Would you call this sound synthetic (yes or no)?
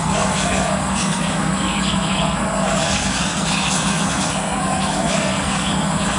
yes